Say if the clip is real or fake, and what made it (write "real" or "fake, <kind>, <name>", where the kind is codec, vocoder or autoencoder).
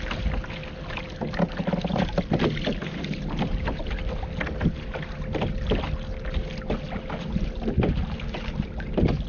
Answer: real